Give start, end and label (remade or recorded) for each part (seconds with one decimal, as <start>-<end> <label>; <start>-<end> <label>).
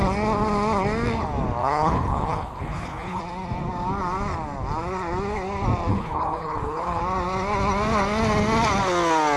0.0-1.6 recorded; 1.6-3.2 remade; 3.2-5.9 recorded; 5.9-7.0 remade; 7.0-9.4 recorded